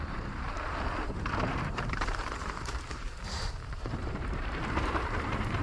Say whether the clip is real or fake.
fake